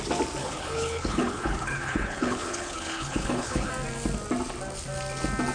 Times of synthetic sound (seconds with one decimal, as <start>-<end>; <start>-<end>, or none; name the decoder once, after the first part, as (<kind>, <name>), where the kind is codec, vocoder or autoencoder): 0.4-3.7 (codec, HILCodec)